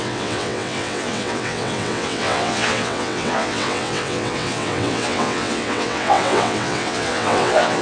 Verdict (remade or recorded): remade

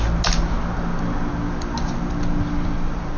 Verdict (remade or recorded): recorded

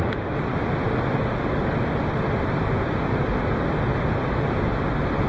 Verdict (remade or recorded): recorded